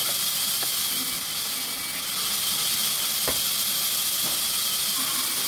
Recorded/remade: recorded